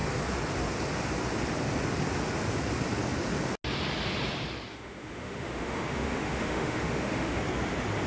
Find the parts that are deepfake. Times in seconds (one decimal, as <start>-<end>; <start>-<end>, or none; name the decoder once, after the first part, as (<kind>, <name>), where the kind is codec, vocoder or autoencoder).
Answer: 4.7-7.4 (autoencoder, DAC-VAE)